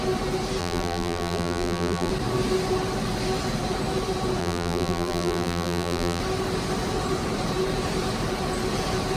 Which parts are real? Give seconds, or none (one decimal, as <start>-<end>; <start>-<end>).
0.0-0.6; 2.1-4.4; 6.2-9.2